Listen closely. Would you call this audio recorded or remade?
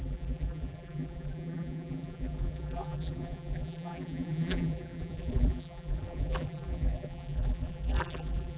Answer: remade